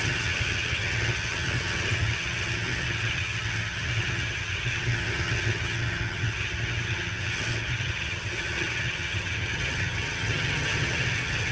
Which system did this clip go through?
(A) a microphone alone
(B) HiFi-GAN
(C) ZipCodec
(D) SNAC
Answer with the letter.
B